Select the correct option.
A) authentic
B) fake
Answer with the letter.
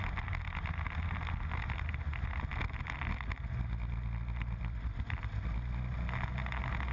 A